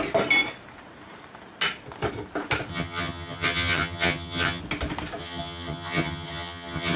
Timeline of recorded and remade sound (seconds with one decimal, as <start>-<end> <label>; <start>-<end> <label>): 0.0-2.7 recorded; 2.7-4.6 remade; 4.6-5.2 recorded; 5.2-7.0 remade